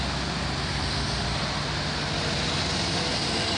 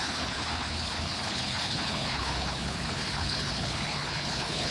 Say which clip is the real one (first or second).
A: first